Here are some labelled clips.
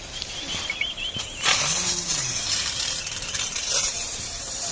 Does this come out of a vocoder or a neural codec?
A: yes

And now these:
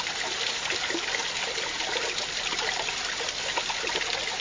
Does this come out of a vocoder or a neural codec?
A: no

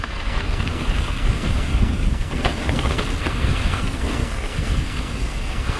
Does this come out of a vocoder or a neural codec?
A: yes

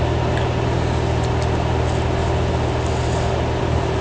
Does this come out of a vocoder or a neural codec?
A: no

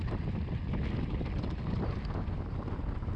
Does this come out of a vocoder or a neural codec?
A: no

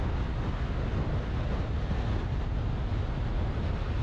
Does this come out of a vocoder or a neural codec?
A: no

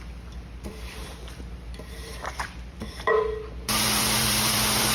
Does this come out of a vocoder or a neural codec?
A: yes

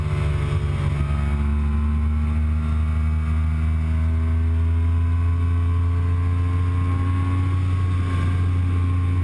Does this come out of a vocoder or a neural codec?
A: no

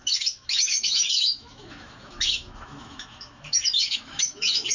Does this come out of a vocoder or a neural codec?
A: yes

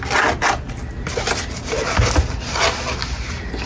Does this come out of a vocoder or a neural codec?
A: no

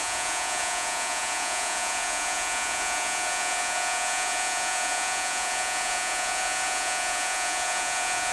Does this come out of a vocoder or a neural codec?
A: yes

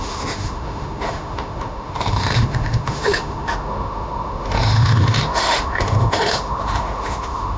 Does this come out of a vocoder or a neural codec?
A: yes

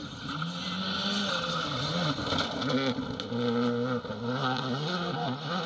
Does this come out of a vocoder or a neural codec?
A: no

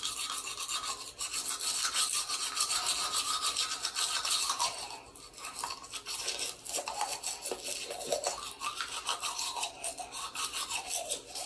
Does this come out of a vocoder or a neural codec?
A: no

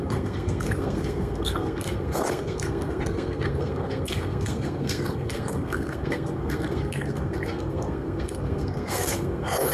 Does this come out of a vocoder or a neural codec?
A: yes